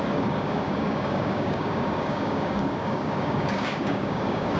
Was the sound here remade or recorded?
remade